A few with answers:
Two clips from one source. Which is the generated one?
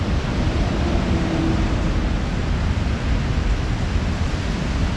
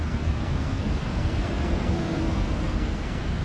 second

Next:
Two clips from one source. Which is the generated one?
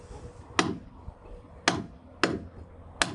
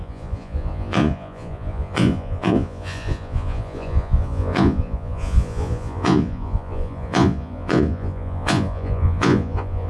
second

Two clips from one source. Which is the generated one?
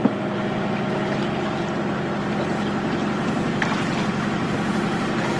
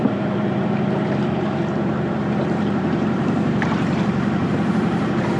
second